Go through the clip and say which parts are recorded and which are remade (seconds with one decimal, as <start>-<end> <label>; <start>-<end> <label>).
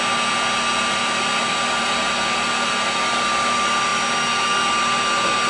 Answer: 0.0-5.5 recorded